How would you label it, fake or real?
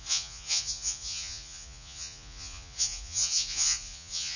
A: fake